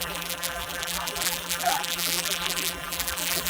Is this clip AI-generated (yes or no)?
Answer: yes